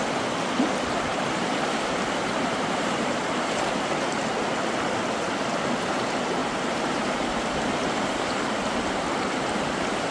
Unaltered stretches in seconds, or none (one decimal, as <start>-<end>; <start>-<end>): 0.0-1.1; 3.2-6.4; 8.2-10.1